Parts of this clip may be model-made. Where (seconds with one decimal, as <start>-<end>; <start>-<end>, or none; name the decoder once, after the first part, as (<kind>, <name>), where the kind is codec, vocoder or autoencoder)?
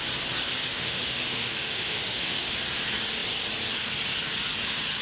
0.7-2.5 (autoencoder, DAC-VAE)